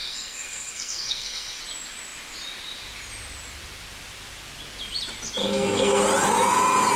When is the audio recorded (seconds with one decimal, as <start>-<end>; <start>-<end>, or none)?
1.6-5.4; 6.0-7.0